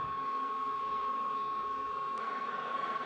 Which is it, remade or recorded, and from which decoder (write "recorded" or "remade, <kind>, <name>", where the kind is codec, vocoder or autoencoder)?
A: remade, codec, SNAC